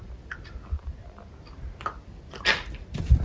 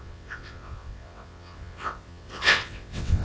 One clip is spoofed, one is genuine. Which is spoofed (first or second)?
second